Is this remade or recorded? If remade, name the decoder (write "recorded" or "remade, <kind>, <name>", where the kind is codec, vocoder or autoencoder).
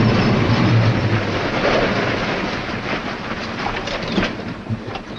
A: remade, vocoder, BigVGAN v2